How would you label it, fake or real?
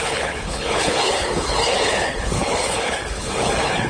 fake